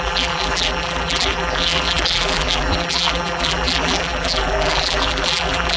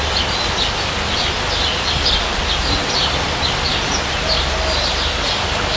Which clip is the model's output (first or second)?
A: first